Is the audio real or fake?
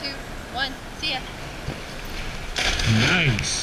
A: real